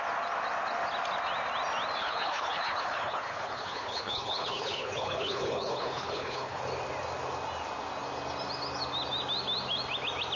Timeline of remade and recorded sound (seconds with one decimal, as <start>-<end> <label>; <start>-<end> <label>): 0.0-2.0 recorded; 2.0-6.6 remade; 6.6-10.4 recorded